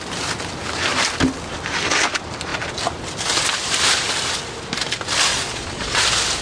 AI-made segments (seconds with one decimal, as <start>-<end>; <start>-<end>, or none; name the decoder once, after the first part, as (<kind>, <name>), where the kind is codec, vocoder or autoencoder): 5.3-6.0 (vocoder, Vocos)